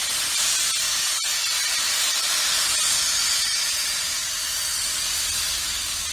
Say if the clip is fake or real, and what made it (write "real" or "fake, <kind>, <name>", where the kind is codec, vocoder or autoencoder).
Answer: real